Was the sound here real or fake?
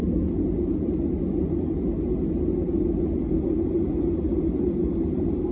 real